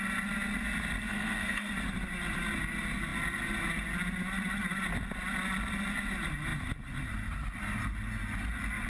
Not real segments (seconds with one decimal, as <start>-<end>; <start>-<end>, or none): 1.1-1.7